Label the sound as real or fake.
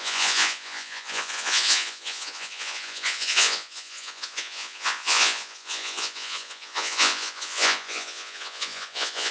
fake